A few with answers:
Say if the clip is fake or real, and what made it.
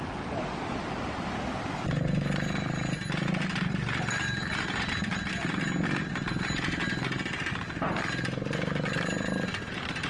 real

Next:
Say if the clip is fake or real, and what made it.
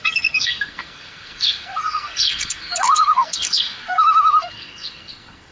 fake, codec, SNAC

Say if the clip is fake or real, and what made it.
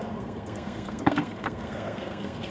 fake, codec, SNAC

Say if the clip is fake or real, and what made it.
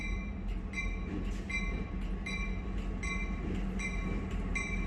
real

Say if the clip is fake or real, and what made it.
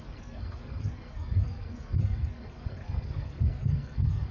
fake, codec, SNAC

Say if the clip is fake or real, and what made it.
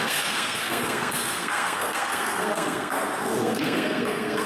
fake, codec, SNAC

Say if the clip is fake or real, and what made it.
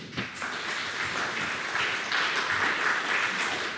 real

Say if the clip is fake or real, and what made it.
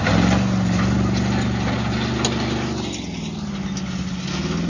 real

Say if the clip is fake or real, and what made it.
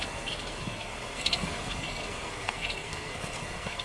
fake, codec, SNAC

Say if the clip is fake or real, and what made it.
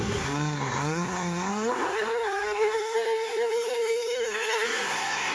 fake, codec, SNAC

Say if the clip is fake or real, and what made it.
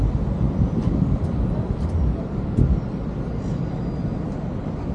real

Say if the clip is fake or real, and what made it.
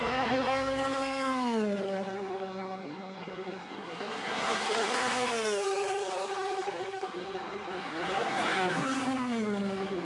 fake, codec, SNAC